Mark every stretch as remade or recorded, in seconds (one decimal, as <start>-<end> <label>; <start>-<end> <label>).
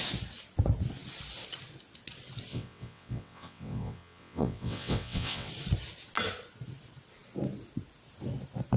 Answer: 0.0-2.5 recorded; 2.5-5.5 remade; 5.5-8.8 recorded